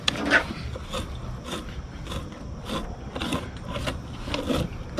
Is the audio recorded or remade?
recorded